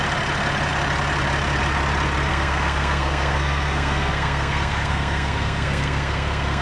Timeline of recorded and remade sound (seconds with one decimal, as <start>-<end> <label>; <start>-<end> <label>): 0.0-2.3 recorded; 2.3-6.6 remade